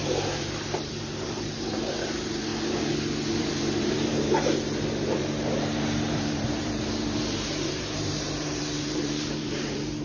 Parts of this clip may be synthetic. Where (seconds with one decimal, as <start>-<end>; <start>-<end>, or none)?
0.0-2.5; 3.4-10.0